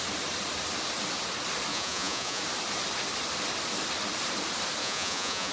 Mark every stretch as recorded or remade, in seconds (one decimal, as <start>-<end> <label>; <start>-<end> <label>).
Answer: 0.0-1.7 recorded; 1.7-2.4 remade; 2.4-4.8 recorded; 4.8-5.5 remade